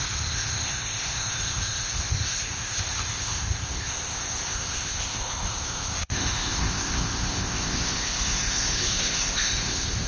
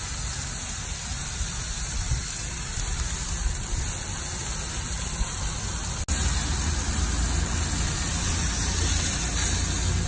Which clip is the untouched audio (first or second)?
second